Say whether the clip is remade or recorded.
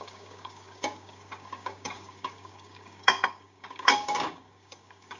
remade